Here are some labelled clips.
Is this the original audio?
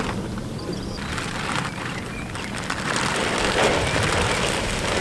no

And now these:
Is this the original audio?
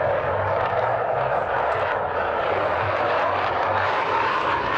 no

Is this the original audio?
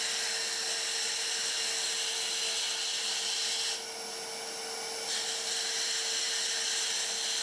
yes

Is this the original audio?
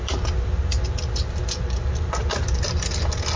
yes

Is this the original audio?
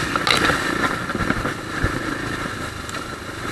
yes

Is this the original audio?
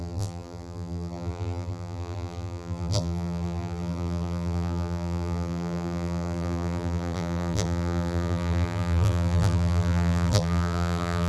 no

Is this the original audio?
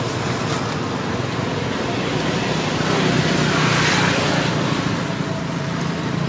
yes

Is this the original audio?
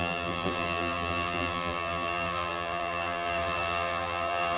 no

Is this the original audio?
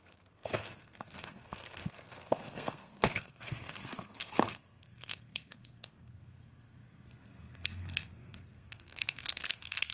no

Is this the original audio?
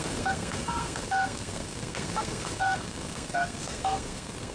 no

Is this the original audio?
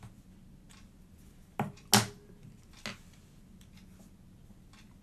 yes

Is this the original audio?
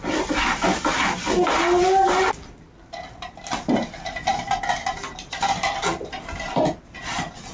yes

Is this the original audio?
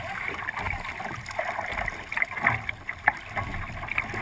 yes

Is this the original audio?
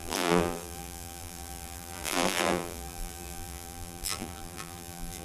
no